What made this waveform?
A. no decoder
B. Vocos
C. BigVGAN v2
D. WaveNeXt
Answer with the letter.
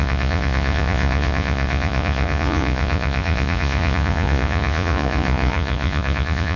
B